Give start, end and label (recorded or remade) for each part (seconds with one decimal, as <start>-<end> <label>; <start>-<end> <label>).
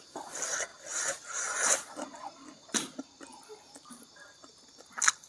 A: 0.0-5.3 recorded